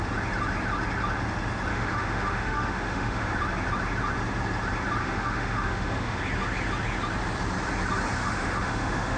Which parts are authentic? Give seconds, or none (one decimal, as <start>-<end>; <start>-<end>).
0.0-1.7; 3.3-5.0; 6.2-8.2